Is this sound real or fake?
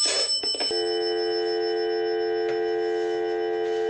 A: real